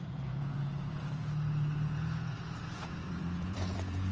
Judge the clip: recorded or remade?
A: remade